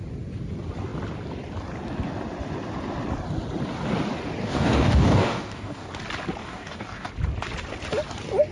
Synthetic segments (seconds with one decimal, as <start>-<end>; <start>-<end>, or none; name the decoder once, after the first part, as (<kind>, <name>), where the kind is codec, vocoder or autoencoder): 4.4-5.9 (codec, DAC); 6.4-7.1